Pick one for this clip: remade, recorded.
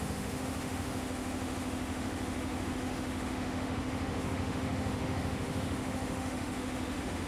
remade